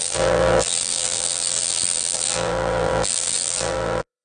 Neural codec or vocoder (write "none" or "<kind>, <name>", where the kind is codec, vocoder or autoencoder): vocoder, BigVGAN v2